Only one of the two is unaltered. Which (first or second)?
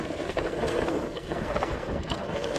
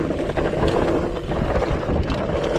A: second